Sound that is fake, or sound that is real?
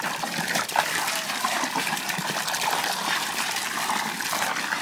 fake